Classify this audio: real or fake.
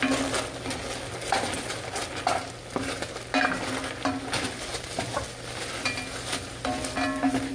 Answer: real